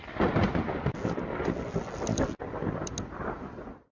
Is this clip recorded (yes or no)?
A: yes